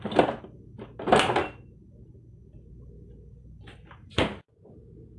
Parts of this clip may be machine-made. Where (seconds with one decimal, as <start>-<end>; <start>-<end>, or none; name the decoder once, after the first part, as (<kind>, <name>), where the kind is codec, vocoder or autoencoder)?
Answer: none